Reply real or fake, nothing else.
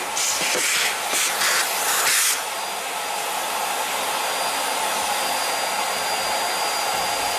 real